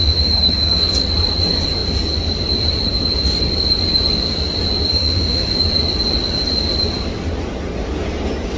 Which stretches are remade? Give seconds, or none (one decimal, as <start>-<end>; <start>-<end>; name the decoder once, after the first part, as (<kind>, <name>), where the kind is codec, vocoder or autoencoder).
0.0-0.8 (autoencoder, DAC-VAE); 4.9-5.5